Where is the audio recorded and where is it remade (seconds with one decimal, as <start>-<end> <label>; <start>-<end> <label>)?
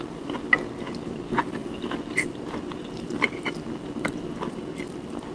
0.0-5.3 recorded